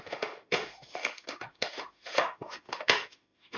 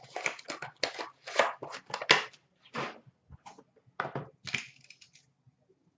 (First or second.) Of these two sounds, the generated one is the first